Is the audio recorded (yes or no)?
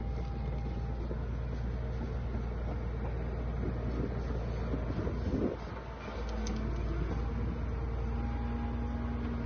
yes